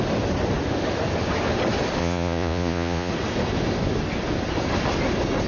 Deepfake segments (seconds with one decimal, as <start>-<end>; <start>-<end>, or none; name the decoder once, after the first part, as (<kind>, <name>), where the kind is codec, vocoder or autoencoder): 2.0-3.1 (vocoder, Vocos)